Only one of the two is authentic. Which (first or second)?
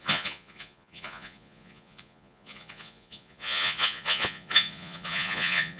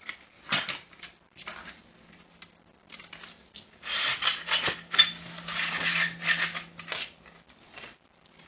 second